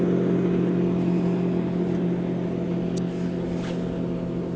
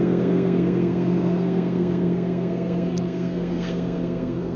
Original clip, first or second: first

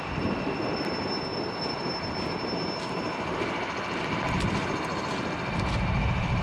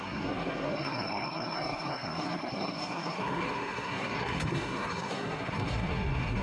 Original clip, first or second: first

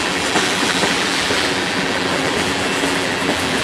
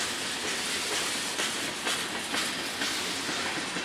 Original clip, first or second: second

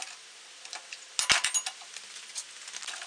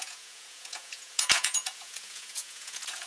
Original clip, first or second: first